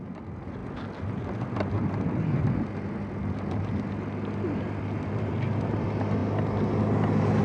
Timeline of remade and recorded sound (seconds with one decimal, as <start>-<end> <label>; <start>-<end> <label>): 0.0-7.4 recorded